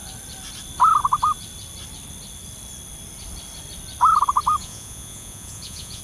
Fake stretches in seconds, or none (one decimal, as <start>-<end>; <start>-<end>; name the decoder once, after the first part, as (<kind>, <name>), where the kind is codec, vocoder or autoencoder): 4.6-6.0 (vocoder, Vocos)